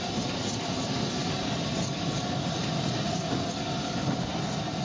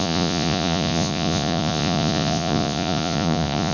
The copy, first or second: second